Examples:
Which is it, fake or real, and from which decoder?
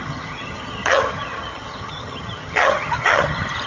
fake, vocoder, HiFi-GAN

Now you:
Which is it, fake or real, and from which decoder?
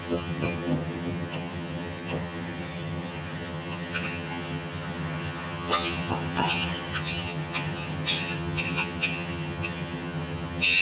fake, vocoder, HiFi-GAN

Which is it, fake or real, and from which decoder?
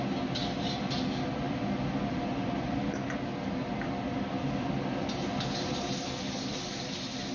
real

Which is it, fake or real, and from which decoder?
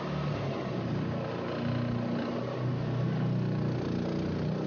real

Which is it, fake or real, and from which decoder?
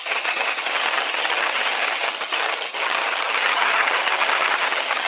fake, vocoder, HiFi-GAN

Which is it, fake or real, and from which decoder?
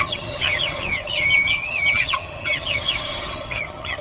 fake, vocoder, HiFi-GAN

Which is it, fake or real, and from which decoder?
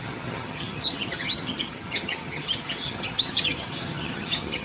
fake, vocoder, HiFi-GAN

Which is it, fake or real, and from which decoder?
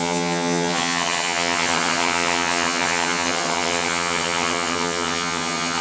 fake, vocoder, HiFi-GAN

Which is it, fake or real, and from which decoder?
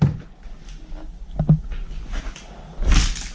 real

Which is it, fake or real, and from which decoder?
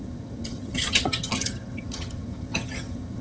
fake, vocoder, HiFi-GAN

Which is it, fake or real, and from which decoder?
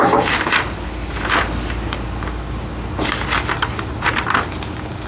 real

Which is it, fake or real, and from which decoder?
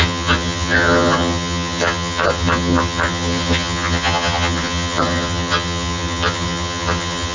fake, vocoder, HiFi-GAN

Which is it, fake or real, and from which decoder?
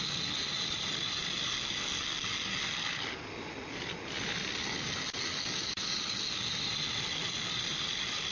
real